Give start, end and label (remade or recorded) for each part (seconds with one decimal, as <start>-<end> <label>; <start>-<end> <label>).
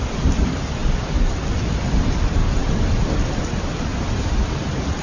0.0-3.9 remade; 3.9-5.0 recorded